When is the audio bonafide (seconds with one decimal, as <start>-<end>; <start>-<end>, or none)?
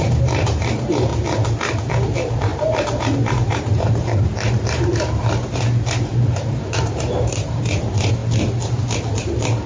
1.1-1.9; 8.2-9.2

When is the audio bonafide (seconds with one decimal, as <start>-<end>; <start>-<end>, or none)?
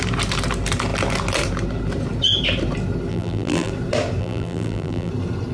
0.0-3.1; 3.7-4.2; 5.1-5.5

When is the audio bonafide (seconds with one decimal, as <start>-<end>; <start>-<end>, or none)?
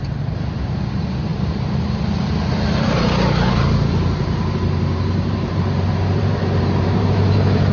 none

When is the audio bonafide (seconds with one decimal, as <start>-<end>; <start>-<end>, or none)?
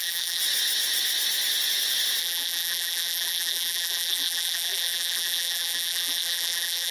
0.4-2.2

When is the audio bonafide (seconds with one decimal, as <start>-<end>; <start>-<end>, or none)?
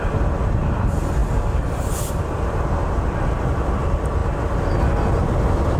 0.0-5.8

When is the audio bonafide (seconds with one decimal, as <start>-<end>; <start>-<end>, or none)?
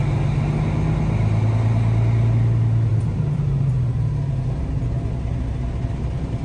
0.0-2.9; 3.7-6.4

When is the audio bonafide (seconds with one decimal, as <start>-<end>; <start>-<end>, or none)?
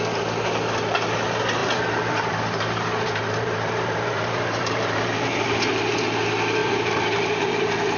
0.0-1.6; 6.0-6.6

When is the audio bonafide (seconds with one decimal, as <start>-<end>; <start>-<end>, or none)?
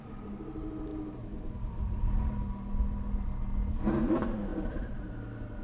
0.0-0.9; 1.5-4.5; 5.1-5.6